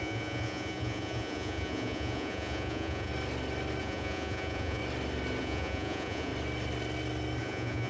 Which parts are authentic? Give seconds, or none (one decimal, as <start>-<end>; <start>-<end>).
3.1-3.8; 4.8-5.4; 6.3-7.4